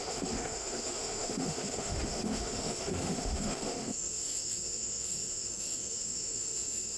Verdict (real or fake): fake